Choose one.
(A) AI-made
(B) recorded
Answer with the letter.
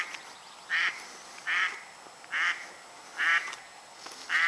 B